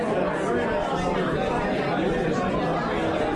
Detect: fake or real real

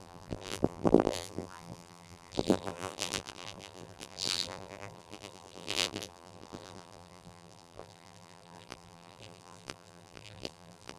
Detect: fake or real fake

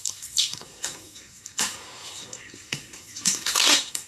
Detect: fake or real fake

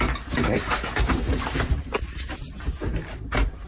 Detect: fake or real real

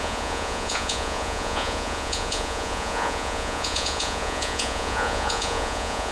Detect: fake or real fake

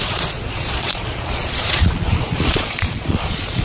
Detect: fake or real fake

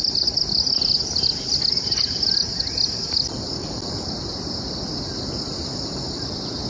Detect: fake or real real